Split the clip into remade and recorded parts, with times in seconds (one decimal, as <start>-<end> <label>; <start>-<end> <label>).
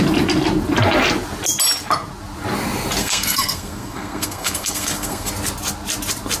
0.0-3.0 recorded; 3.0-5.3 remade; 5.3-6.4 recorded